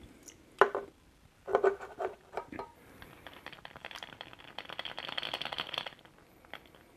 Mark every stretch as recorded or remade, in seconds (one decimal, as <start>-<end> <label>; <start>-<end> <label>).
0.0-1.5 recorded; 1.5-4.4 remade; 4.4-5.5 recorded; 5.5-6.1 remade; 6.1-7.0 recorded